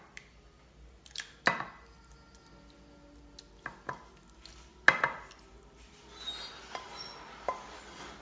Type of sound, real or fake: real